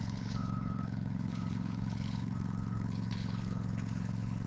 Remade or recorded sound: remade